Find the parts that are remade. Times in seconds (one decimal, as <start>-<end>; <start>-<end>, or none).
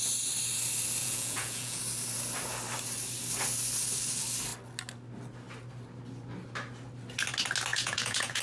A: 1.0-1.8; 7.7-8.4